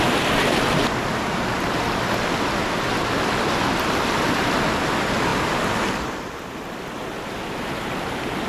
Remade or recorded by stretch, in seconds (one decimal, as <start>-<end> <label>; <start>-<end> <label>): 0.0-8.5 recorded